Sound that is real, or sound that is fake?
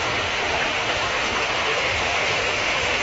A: fake